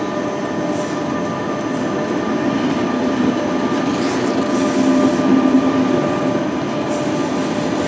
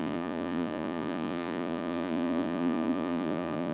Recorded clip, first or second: first